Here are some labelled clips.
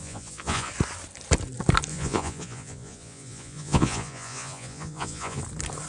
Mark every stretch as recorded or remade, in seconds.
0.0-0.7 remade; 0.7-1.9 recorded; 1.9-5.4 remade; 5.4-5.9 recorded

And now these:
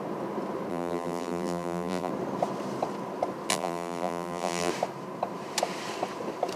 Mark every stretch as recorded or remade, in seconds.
0.0-0.7 recorded; 0.7-2.1 remade; 2.1-3.5 recorded; 3.5-4.7 remade; 4.7-6.6 recorded

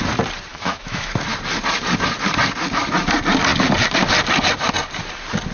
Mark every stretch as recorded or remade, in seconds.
0.0-0.5 recorded; 0.5-1.1 remade; 1.1-5.5 recorded

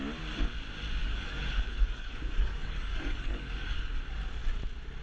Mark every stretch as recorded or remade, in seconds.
0.0-1.0 recorded; 1.0-4.0 remade; 4.0-5.0 recorded

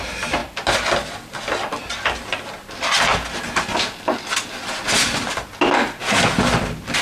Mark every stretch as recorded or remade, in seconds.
0.0-7.0 recorded